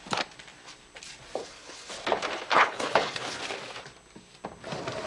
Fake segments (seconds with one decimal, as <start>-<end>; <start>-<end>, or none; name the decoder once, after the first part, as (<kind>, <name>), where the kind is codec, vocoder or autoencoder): 1.4-1.9 (codec, HILCodec); 2.5-3.4